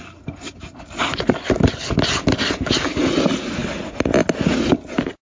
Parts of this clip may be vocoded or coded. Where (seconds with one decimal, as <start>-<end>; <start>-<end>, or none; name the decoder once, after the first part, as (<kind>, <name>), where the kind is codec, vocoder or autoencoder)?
none